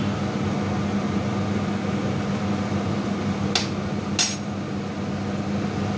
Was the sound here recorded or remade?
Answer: recorded